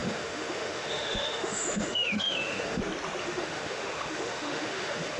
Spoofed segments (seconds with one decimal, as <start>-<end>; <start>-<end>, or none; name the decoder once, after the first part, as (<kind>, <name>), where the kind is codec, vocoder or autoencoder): 0.0-2.8 (autoencoder, DAC-VAE); 3.2-5.2